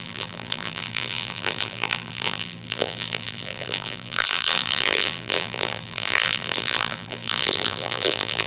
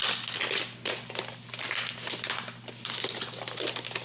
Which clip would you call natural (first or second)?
second